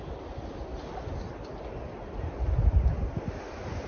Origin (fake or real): real